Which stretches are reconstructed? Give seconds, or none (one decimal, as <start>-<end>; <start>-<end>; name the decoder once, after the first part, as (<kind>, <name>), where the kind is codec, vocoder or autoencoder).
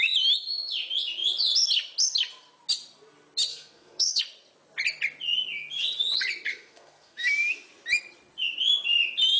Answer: 3.5-4.2 (codec, SNAC); 6.5-7.2